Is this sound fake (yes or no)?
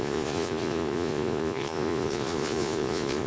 yes